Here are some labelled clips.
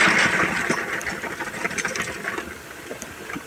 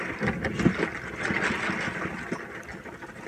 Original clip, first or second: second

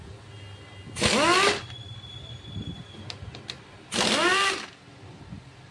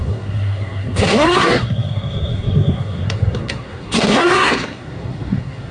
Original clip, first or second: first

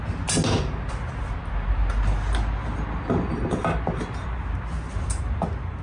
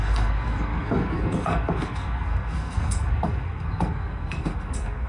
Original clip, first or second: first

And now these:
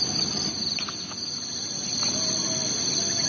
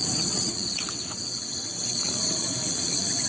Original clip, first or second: first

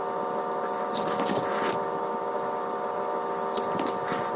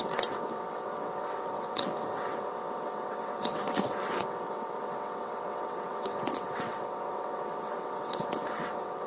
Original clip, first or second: first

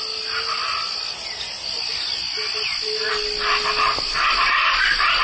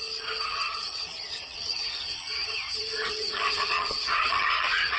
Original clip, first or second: first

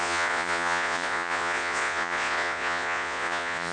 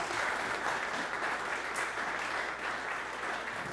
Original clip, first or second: second